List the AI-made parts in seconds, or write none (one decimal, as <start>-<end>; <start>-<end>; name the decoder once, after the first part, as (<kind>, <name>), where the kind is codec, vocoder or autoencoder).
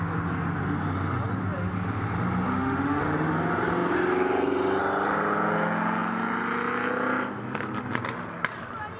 2.5-3.0 (autoencoder, DAC-VAE)